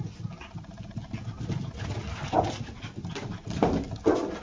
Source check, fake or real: real